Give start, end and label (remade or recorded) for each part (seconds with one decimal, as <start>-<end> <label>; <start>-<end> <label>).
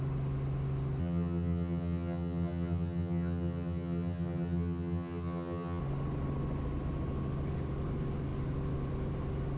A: 0.0-1.0 recorded; 1.0-5.8 remade; 5.8-9.6 recorded